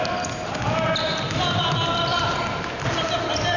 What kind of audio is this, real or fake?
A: real